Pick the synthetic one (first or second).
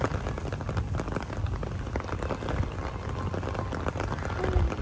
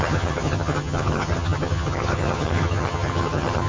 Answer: second